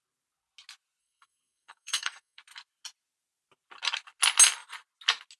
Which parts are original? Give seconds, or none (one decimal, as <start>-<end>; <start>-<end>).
0.0-1.0; 2.4-5.4